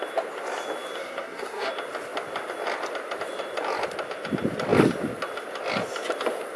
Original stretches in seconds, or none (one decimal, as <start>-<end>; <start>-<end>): 0.0-1.0; 1.7-6.6

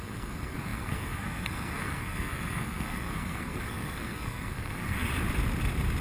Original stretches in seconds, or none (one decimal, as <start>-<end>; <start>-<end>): 5.1-6.0

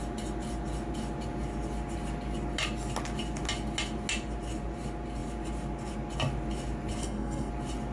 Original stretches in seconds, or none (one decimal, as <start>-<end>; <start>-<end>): 0.0-7.0; 7.5-7.9

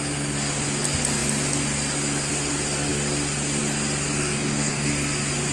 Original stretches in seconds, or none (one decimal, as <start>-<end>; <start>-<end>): 0.0-4.2; 4.9-5.5